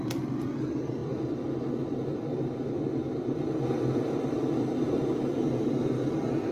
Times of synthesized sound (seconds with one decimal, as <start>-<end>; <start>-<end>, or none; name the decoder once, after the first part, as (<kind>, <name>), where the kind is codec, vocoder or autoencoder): none